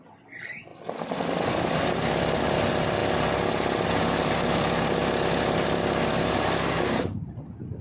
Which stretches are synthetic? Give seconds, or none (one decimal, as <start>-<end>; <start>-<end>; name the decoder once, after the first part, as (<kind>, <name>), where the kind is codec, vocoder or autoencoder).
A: none